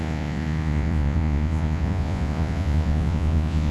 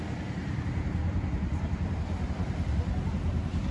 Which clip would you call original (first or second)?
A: second